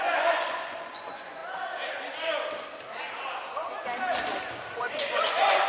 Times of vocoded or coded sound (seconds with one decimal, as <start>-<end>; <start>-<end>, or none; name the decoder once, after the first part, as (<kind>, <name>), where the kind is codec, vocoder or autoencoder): 0.0-1.4 (vocoder, Vocos); 4.8-5.7